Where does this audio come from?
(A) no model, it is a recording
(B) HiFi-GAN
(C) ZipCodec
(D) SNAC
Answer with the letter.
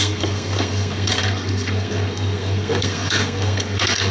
D